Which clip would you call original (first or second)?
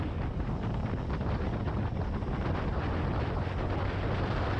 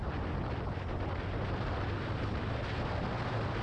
first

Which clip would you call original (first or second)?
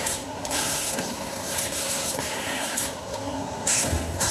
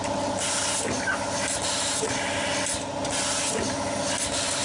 second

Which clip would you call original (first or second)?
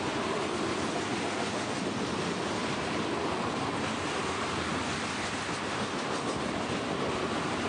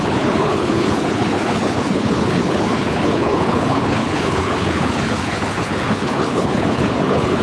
first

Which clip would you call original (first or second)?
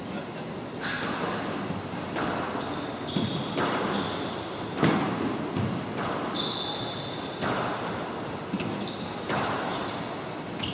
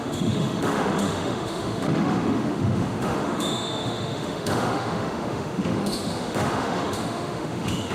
first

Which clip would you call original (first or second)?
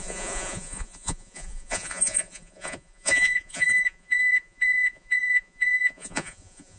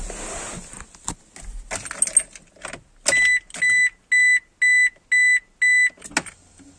second